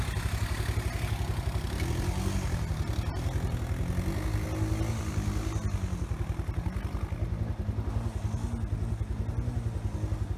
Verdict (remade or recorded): recorded